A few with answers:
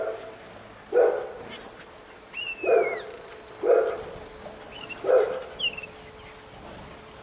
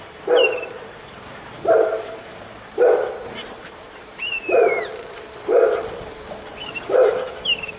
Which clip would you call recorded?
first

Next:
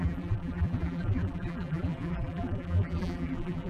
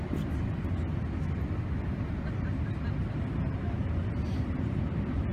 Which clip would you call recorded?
second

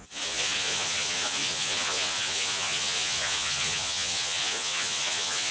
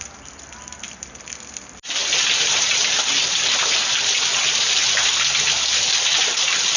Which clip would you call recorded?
second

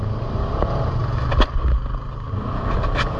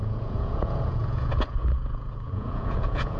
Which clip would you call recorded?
first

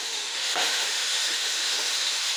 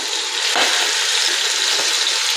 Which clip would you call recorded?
second